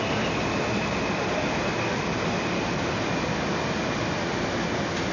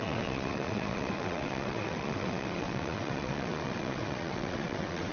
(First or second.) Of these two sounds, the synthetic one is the second